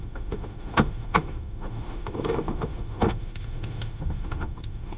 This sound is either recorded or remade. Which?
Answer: remade